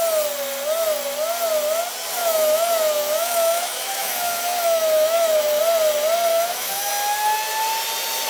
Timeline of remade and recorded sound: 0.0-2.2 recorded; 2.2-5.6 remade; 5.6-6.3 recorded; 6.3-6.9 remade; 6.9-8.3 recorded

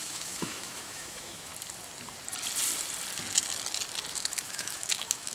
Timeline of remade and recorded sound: 0.0-1.5 remade; 1.5-4.1 recorded; 4.1-5.3 remade

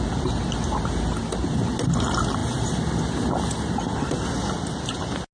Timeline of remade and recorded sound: 0.0-5.3 recorded

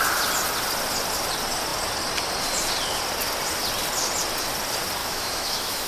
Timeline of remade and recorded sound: 0.0-5.0 recorded; 5.0-5.9 remade

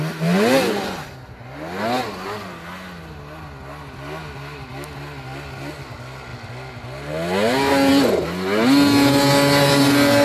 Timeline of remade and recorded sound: 0.0-10.2 recorded

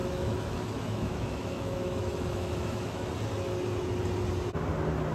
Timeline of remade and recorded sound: 0.0-3.1 remade; 3.1-5.1 recorded

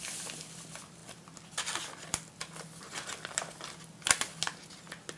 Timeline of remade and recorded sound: 0.0-5.2 recorded

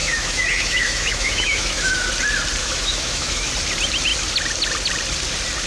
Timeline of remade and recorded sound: 0.0-2.1 remade; 2.1-2.6 recorded; 2.6-3.5 remade; 3.5-5.7 recorded